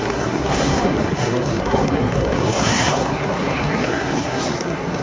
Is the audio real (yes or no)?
no